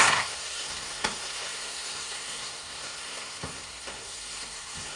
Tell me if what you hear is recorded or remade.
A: remade